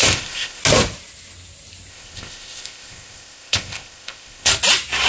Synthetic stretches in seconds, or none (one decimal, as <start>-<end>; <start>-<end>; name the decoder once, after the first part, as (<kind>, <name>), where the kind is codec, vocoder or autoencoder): 0.0-0.6 (codec, ZipCodec); 1.9-4.5